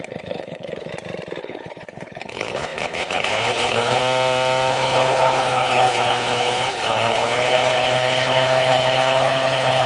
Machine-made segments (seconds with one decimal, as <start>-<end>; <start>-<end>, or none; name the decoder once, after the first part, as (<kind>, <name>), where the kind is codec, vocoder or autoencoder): 0.0-0.9 (codec, HILCodec); 1.4-4.0; 4.7-9.9